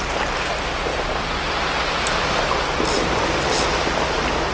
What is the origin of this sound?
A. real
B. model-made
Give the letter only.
A